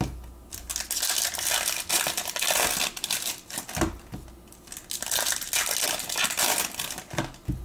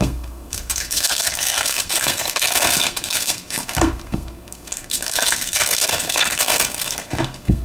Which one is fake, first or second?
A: second